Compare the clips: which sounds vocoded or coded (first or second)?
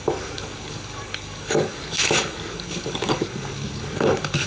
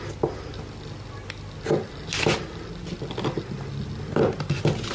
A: first